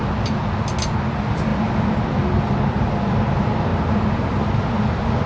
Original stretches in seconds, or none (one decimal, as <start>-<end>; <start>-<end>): 0.0-5.3